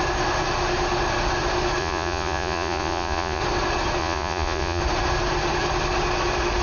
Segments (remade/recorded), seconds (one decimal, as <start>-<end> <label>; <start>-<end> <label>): 0.0-1.8 recorded; 1.8-3.4 remade; 3.4-4.0 recorded; 4.0-4.8 remade; 4.8-6.6 recorded